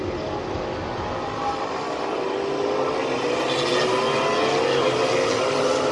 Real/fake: real